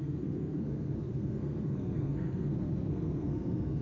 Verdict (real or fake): fake